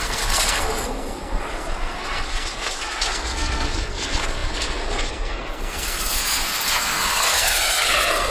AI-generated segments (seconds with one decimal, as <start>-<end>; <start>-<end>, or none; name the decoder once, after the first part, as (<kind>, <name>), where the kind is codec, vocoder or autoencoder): 0.0-8.3 (codec, SNAC)